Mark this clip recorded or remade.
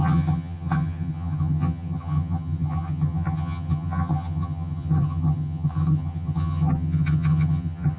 remade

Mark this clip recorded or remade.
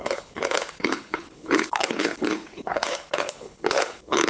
remade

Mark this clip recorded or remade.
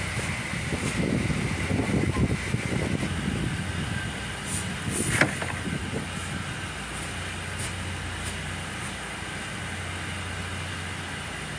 recorded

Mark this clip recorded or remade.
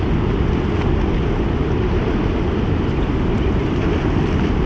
recorded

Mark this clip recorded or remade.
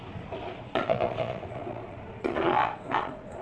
remade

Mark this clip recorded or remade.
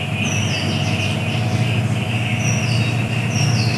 recorded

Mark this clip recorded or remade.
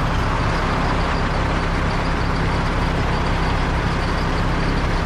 recorded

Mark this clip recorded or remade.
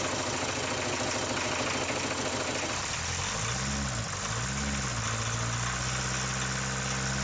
recorded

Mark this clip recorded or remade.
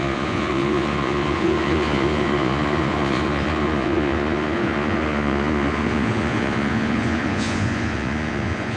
remade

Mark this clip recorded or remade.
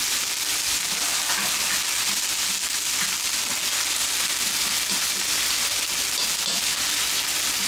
recorded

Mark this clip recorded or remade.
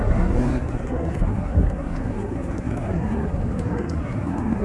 remade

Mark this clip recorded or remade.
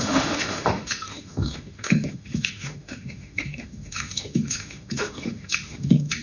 remade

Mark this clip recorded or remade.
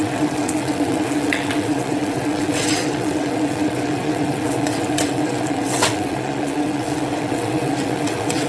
remade